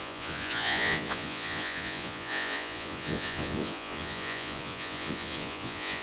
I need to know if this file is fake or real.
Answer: fake